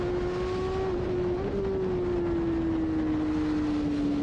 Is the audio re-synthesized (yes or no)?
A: no